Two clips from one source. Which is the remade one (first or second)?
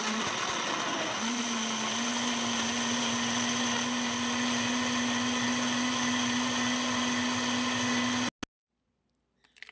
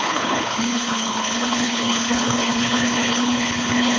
second